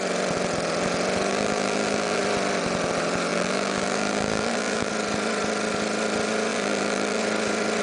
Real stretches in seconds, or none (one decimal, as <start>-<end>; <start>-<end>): 0.0-1.3; 2.2-3.3; 4.9-6.5; 7.2-7.8